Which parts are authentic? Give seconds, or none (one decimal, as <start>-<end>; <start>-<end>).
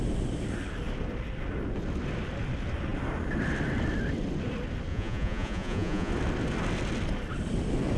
0.0-4.9; 6.1-8.0